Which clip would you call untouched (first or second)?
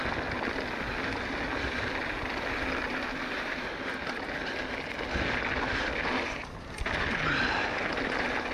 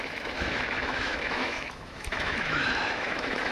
first